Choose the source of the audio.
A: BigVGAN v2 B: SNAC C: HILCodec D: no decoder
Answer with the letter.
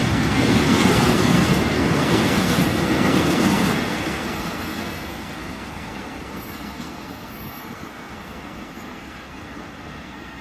B